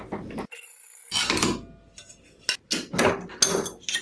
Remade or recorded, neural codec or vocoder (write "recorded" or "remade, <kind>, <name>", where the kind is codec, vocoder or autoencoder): recorded